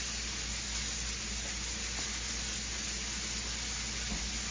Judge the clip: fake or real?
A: real